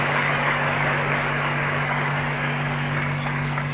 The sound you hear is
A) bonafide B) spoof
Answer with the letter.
B